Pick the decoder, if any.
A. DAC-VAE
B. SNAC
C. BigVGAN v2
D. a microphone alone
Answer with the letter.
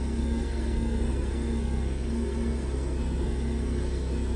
B